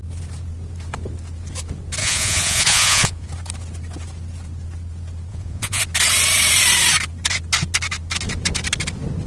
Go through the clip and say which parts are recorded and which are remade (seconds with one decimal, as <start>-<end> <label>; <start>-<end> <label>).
0.0-2.0 recorded; 2.0-3.3 remade; 3.3-5.3 recorded; 5.3-5.8 remade; 5.8-9.3 recorded